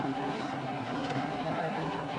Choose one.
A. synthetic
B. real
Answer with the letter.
A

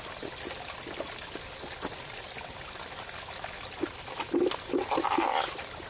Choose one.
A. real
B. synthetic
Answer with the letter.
A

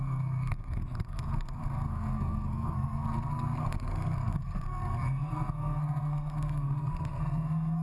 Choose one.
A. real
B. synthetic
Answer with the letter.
B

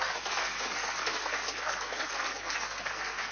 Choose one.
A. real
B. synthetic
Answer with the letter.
B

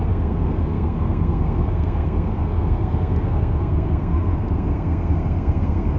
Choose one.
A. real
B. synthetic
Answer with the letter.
B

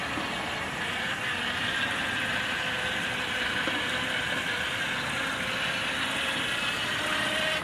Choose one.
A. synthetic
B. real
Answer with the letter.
B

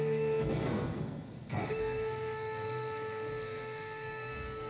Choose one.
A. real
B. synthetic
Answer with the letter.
B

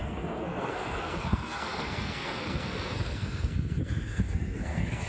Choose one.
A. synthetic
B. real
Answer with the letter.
A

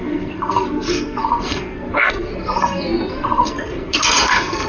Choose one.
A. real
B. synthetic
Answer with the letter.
B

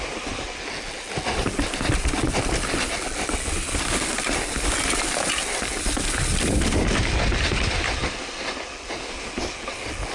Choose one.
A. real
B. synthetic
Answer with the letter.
A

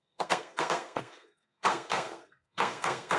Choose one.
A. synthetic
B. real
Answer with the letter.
A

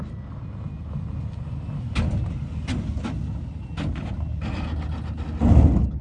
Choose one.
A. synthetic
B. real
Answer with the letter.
B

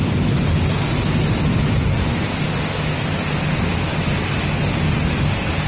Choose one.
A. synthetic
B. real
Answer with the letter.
B